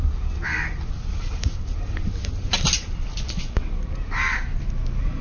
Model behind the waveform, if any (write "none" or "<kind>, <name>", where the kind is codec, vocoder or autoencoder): none